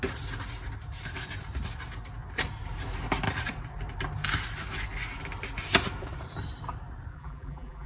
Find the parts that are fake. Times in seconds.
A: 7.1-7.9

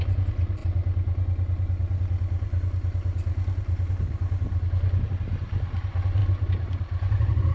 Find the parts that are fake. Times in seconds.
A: none

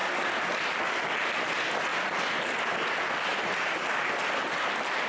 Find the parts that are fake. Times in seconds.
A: 0.0-0.8; 1.9-5.1

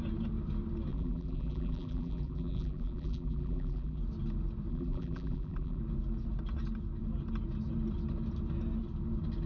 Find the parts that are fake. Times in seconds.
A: 0.9-4.0; 4.7-5.8

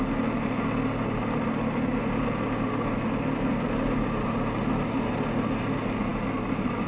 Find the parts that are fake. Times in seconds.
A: none

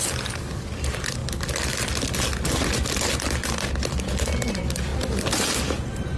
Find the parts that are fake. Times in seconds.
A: 0.0-1.2; 4.5-4.9; 5.8-6.2

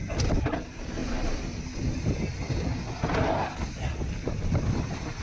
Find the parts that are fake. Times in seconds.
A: none